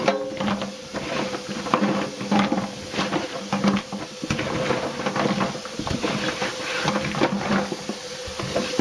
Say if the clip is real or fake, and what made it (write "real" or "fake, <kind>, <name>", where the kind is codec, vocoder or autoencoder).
real